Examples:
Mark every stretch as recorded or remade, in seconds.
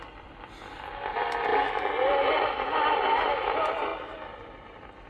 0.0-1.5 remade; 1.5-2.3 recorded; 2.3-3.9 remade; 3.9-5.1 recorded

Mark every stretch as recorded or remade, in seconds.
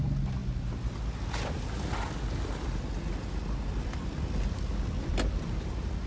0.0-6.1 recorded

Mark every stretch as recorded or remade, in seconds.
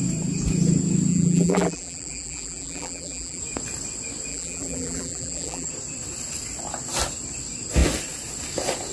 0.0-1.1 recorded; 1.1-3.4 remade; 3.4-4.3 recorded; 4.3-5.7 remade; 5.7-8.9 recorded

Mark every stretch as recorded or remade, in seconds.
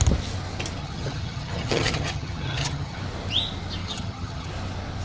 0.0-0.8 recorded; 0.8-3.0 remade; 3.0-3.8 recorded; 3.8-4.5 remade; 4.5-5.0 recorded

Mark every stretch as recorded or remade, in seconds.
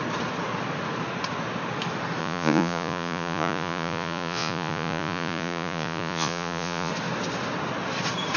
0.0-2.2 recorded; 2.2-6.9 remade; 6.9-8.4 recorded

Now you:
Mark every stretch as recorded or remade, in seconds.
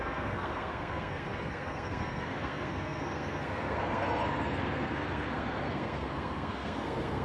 0.0-7.2 remade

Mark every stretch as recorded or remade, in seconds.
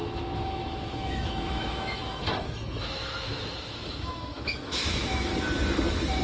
0.0-5.3 remade; 5.3-6.2 recorded